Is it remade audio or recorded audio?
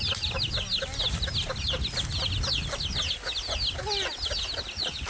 recorded